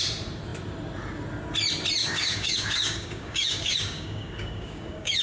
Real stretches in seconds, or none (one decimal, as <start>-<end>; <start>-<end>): 0.0-2.0